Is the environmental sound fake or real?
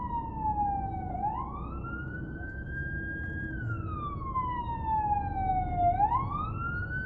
real